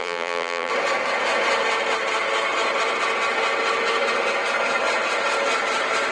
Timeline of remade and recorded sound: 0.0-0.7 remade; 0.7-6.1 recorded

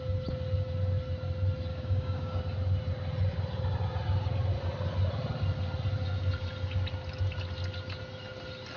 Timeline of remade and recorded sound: 0.0-1.7 recorded; 1.7-2.4 remade; 2.4-8.8 recorded